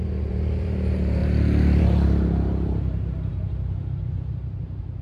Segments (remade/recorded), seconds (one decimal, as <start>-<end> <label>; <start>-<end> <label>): 0.0-5.0 remade